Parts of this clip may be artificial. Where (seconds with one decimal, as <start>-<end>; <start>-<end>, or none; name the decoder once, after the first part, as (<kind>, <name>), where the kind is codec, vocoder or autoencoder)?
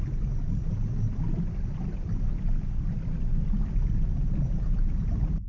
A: none